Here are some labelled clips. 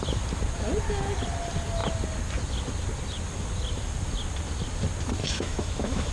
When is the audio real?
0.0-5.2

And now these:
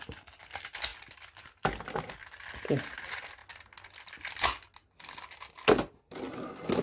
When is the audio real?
0.0-6.8

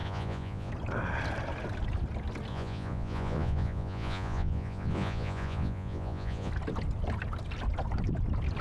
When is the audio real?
0.7-2.5; 6.5-8.6

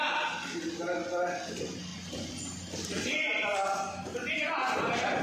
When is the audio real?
0.0-5.2

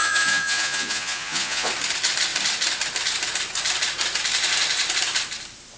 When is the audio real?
1.7-5.8

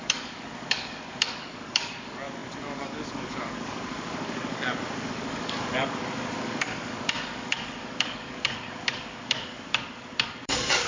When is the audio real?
none